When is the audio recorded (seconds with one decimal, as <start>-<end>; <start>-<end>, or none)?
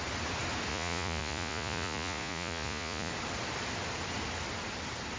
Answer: 0.0-0.7; 3.1-5.2